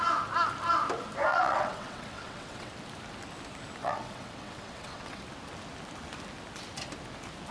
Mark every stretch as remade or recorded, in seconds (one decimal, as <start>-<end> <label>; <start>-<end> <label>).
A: 0.0-1.3 recorded; 1.3-2.7 remade; 2.7-3.8 recorded; 3.8-5.2 remade; 5.2-7.5 recorded

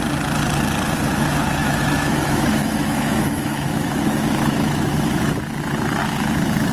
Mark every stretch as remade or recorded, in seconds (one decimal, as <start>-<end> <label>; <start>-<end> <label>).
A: 0.0-1.6 recorded; 1.6-5.6 remade; 5.6-6.0 recorded; 6.0-6.7 remade

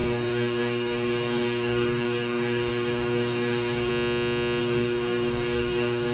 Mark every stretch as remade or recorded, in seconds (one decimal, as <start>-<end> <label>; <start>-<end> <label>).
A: 0.0-3.9 remade; 3.9-4.6 recorded; 4.6-6.1 remade

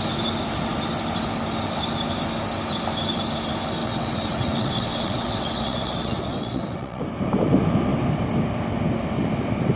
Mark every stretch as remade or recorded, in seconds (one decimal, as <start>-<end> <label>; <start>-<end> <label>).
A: 0.0-3.8 recorded; 3.8-7.0 remade; 7.0-9.8 recorded

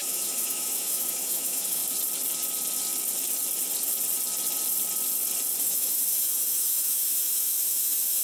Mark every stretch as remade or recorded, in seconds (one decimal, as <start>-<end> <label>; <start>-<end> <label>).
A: 0.0-1.8 remade; 1.8-5.6 recorded; 5.6-8.2 remade

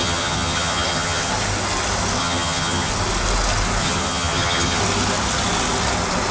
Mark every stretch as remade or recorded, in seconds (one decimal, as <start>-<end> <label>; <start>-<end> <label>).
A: 0.0-1.3 remade; 1.3-2.2 recorded; 2.2-2.9 remade; 2.9-3.8 recorded; 3.8-4.8 remade; 4.8-6.3 recorded

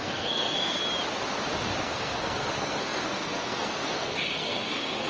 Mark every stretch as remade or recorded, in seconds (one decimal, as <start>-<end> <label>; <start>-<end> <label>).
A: 0.0-0.8 remade; 0.8-1.8 recorded; 1.8-5.1 remade

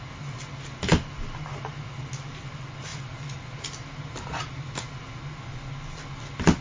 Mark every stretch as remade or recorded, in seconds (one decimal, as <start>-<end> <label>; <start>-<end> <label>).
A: 0.0-6.6 recorded